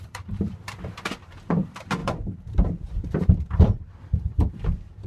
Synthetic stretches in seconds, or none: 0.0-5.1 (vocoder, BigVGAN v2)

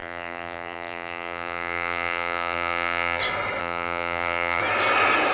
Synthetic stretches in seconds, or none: 0.0-3.2 (vocoder, BigVGAN v2); 3.6-4.6